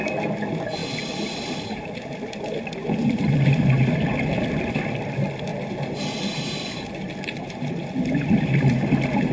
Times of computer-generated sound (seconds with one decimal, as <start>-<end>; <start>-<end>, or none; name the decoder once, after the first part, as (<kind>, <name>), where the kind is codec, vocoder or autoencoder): 0.8-1.5 (vocoder, BigVGAN v2)